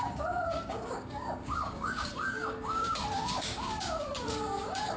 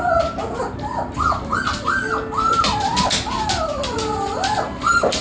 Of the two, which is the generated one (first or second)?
first